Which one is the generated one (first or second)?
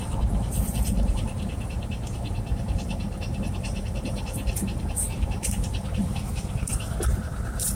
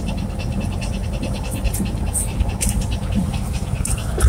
first